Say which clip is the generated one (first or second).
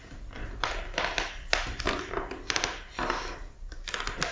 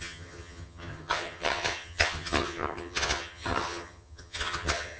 second